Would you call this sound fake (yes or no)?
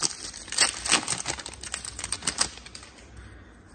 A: no